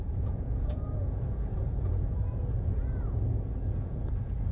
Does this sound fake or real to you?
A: fake